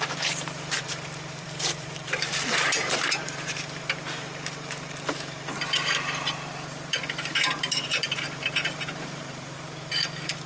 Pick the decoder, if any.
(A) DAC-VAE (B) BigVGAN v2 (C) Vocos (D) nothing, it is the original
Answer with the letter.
B